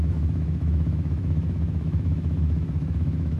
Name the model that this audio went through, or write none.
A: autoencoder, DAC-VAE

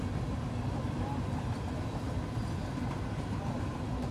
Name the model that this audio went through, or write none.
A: none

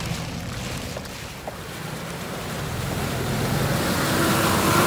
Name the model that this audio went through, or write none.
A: none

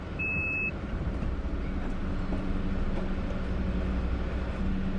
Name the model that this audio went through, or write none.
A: none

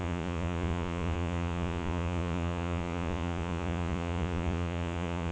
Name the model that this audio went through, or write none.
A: vocoder, Vocos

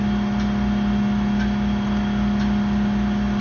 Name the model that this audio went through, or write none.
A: none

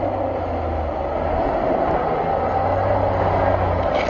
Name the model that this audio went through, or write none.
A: none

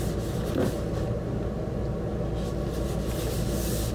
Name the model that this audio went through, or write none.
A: none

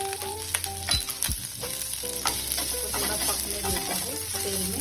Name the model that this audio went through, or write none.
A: none